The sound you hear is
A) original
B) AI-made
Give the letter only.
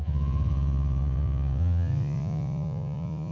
B